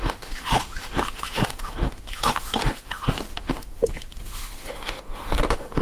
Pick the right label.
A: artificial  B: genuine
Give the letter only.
A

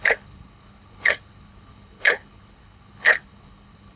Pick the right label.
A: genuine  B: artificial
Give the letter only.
B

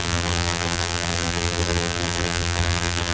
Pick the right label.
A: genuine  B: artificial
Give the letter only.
B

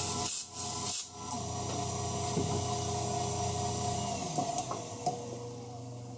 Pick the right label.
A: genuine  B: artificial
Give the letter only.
B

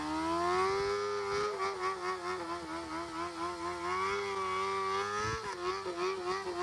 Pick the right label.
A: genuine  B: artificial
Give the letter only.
A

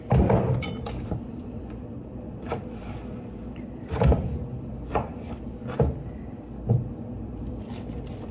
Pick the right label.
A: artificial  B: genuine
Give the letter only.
A